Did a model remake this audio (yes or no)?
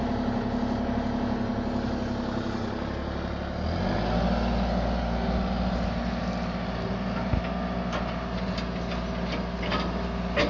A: no